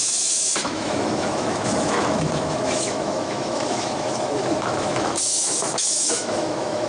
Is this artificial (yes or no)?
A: yes